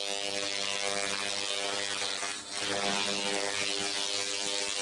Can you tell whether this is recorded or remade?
recorded